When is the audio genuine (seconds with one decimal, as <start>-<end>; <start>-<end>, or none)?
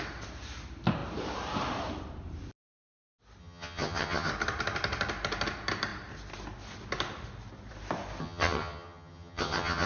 0.0-3.4; 4.3-8.2